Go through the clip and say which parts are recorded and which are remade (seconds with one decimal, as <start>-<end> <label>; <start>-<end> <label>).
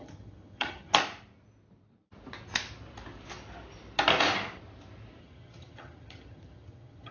0.0-0.9 remade; 0.9-5.2 recorded; 5.2-7.1 remade